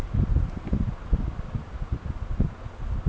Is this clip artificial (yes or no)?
no